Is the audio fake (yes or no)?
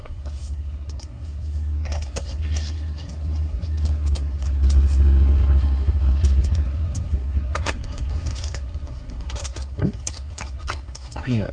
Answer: yes